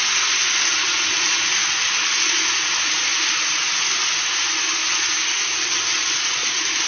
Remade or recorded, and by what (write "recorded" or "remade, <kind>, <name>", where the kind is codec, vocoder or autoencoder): recorded